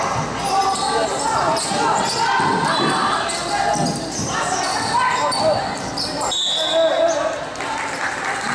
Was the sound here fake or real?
real